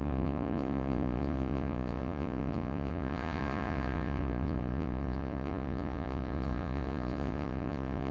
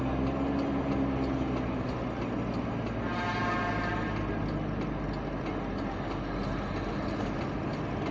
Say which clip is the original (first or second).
second